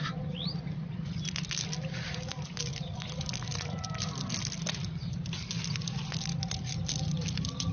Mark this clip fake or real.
real